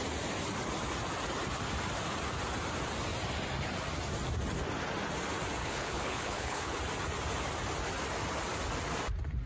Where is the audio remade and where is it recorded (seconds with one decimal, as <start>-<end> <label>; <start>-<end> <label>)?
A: 0.0-5.6 recorded; 5.6-6.8 remade; 6.8-9.5 recorded